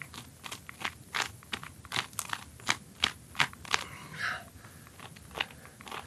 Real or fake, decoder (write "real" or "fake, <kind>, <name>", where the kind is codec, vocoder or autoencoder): real